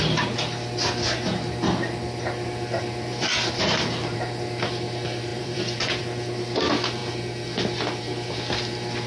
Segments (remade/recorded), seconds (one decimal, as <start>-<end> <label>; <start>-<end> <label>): 0.0-3.1 recorded; 3.1-4.2 remade; 4.2-5.3 recorded; 5.3-6.0 remade; 6.0-9.1 recorded